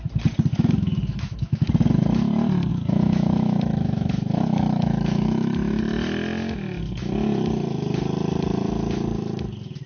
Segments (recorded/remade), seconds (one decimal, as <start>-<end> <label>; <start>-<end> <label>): 0.0-0.5 recorded; 0.5-1.7 remade; 1.7-2.7 recorded; 2.7-5.8 remade; 5.8-9.9 recorded